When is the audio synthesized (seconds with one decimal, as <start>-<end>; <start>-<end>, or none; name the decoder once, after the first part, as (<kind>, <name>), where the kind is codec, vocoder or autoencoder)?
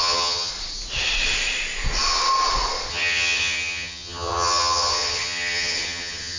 0.0-0.5 (vocoder, HiFi-GAN); 2.9-6.4